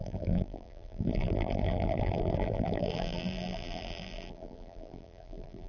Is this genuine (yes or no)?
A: no